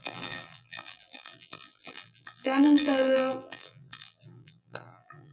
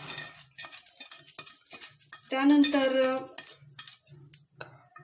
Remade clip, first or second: first